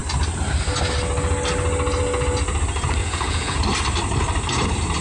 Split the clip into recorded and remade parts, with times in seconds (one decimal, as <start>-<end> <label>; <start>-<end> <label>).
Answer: 0.0-3.0 recorded; 3.0-3.6 remade; 3.6-5.0 recorded